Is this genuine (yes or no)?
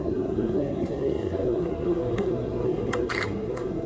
no